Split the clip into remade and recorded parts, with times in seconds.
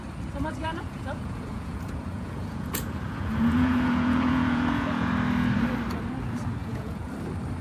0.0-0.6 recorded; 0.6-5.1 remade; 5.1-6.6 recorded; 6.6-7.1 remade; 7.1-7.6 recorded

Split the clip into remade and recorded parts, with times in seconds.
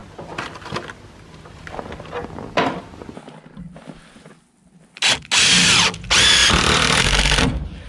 0.0-6.4 recorded; 6.4-7.9 remade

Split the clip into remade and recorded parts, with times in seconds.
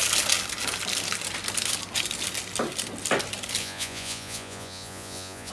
0.0-3.6 recorded; 3.6-5.5 remade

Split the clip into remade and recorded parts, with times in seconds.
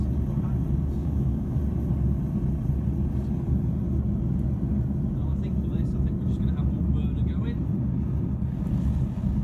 0.0-1.0 recorded; 1.0-1.6 remade; 1.6-9.4 recorded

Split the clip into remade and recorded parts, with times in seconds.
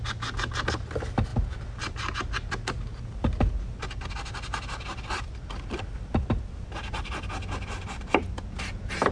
0.0-9.1 recorded